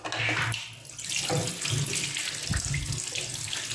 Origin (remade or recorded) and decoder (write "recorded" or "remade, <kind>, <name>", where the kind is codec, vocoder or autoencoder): recorded